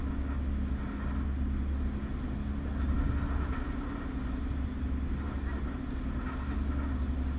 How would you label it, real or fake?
real